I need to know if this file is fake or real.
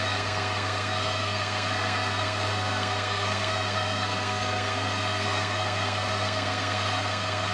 fake